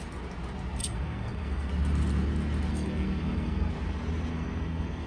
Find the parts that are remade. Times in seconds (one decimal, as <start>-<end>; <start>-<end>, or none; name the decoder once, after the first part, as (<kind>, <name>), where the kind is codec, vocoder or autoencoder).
0.8-1.7 (codec, SNAC); 2.7-3.7; 4.3-5.1